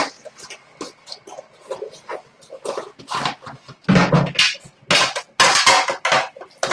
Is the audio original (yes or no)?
yes